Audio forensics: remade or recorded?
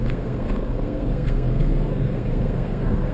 remade